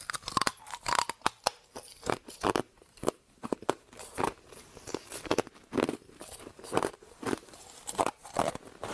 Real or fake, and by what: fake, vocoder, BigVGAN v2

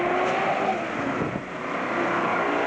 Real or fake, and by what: real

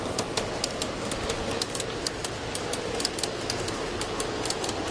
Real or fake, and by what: real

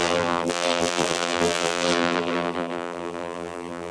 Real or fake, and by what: fake, vocoder, BigVGAN v2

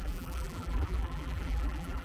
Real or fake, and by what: fake, vocoder, BigVGAN v2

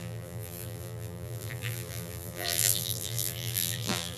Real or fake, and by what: fake, vocoder, BigVGAN v2